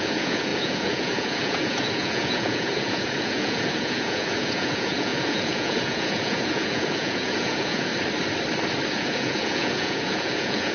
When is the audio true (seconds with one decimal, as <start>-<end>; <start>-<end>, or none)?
7.9-8.9